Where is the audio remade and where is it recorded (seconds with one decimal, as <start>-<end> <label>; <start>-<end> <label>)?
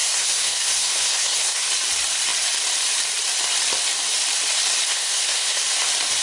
0.0-1.7 remade; 1.7-4.9 recorded; 4.9-5.6 remade; 5.6-6.2 recorded